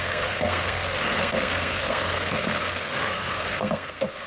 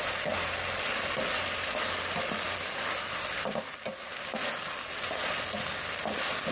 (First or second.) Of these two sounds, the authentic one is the second